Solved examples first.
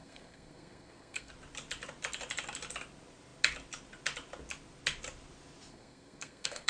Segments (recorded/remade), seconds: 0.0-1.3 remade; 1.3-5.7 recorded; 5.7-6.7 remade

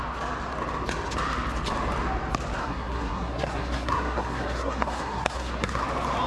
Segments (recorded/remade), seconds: 0.0-2.6 recorded; 2.6-5.8 remade; 5.8-6.3 recorded